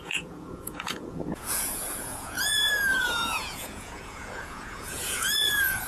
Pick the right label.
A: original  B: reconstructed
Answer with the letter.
B